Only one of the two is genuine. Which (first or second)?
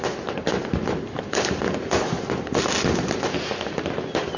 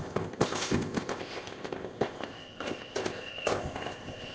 first